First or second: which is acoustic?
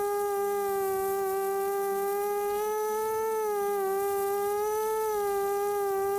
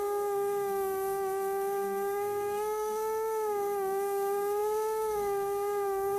first